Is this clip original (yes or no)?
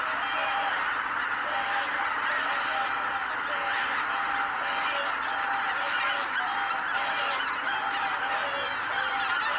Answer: yes